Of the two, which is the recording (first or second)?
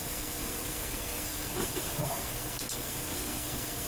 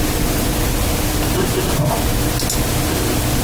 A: second